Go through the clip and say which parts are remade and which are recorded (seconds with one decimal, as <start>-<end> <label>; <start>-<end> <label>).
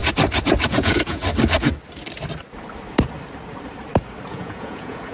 0.0-0.7 recorded; 0.7-1.2 remade; 1.2-4.3 recorded; 4.3-5.1 remade